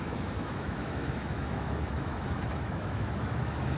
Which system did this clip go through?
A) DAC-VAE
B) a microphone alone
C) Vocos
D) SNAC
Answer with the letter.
A